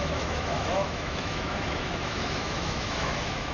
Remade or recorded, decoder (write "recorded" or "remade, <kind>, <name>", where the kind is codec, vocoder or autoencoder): remade, autoencoder, DAC-VAE